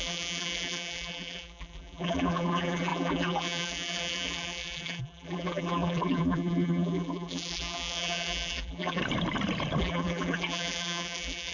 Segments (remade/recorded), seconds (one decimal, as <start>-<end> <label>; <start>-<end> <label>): 0.0-9.0 remade; 9.0-9.8 recorded; 9.8-11.5 remade